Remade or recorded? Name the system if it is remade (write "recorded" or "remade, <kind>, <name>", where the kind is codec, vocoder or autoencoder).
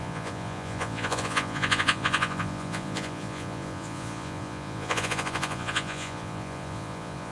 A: remade, vocoder, Vocos